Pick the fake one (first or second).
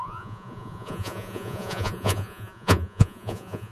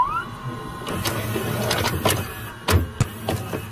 first